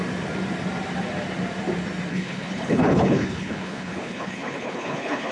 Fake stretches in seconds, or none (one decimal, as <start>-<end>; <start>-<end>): 2.1-5.3